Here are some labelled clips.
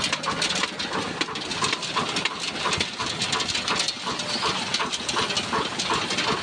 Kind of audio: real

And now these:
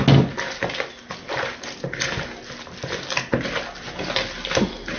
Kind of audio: real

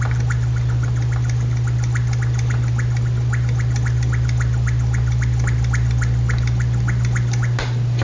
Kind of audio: real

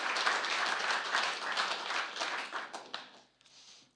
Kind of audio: real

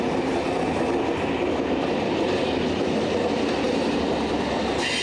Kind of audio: real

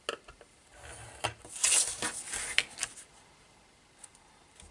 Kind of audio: real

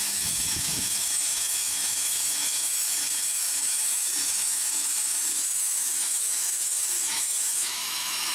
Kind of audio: fake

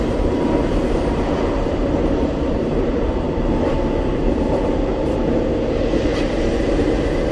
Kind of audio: fake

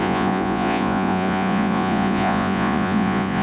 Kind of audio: fake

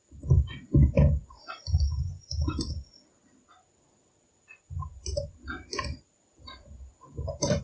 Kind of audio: real